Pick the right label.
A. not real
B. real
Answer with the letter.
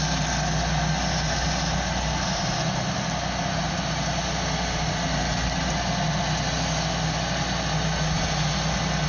B